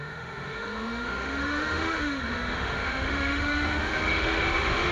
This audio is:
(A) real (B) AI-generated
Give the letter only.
B